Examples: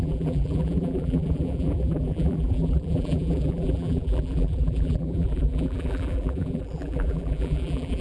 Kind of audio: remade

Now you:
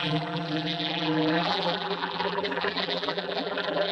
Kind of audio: remade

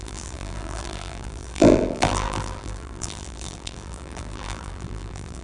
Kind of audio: remade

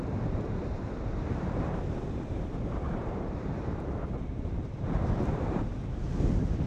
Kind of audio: remade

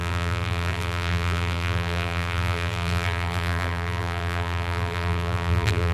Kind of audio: remade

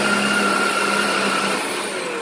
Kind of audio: recorded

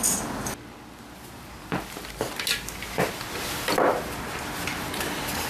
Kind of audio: recorded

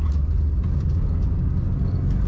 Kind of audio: recorded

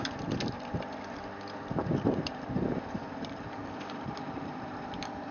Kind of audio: remade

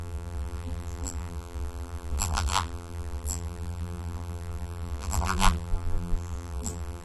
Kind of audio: remade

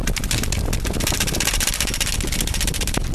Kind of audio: recorded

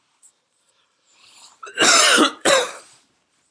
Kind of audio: remade